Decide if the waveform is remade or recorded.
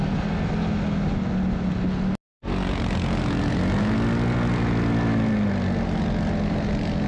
recorded